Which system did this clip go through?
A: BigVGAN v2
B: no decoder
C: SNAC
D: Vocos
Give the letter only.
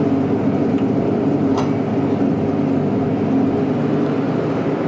B